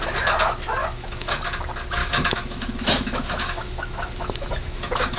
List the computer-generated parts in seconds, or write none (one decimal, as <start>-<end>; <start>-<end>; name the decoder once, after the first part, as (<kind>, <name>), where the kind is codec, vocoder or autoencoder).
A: 0.8-1.3 (autoencoder, DAC-VAE); 2.0-5.2